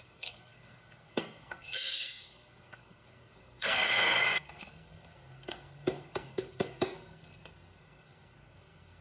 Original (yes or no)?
no